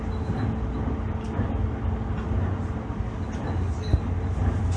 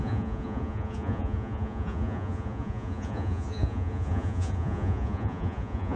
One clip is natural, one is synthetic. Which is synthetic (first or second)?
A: second